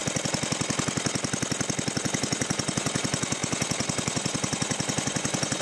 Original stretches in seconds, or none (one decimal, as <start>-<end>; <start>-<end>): 0.0-2.0